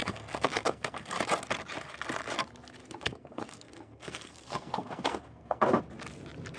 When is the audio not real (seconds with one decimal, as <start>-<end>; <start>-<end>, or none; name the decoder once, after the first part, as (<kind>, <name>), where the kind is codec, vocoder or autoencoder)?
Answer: 0.0-1.2 (codec, SNAC); 2.8-5.8